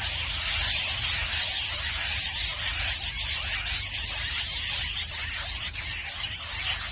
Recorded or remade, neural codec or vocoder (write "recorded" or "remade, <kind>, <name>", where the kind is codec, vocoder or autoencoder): recorded